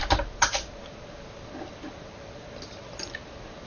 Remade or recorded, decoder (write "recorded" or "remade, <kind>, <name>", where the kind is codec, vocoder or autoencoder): recorded